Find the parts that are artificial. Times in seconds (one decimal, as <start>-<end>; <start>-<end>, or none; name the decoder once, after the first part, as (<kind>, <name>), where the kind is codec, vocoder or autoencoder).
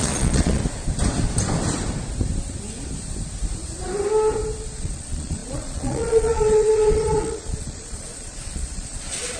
0.0-0.6 (vocoder, Vocos); 4.7-9.4